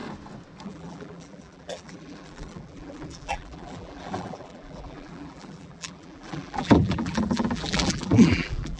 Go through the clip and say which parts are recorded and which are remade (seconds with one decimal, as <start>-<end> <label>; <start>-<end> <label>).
0.0-0.6 recorded; 0.6-8.8 remade